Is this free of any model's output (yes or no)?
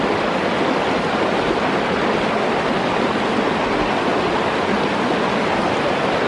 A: yes